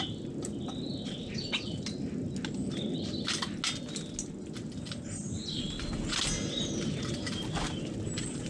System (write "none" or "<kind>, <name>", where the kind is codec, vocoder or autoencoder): none